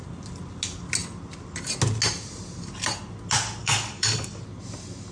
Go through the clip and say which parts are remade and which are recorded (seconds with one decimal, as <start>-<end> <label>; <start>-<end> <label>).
0.0-3.6 recorded; 3.6-4.4 remade; 4.4-5.1 recorded